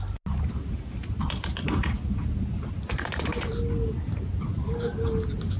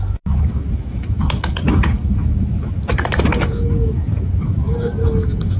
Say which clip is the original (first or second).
first